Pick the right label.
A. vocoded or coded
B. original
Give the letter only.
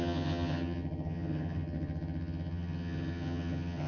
A